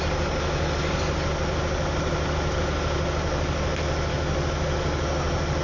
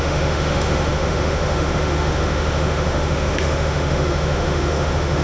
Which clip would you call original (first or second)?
first